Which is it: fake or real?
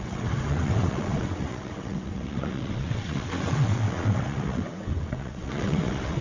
fake